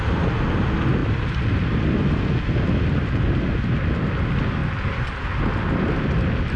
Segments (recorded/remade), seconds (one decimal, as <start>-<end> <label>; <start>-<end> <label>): 0.0-1.0 recorded; 1.0-1.6 remade; 1.6-6.6 recorded